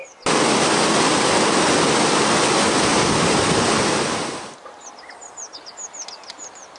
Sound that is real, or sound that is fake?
real